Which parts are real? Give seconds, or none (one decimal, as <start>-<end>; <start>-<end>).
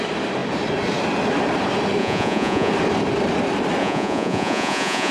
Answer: 0.0-2.0; 2.7-3.8